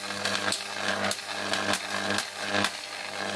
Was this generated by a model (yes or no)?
no